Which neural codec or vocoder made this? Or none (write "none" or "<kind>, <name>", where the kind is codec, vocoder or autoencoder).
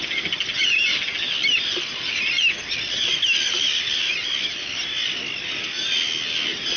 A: none